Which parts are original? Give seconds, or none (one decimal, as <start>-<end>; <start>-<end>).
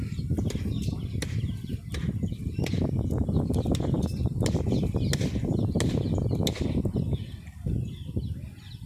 0.0-8.9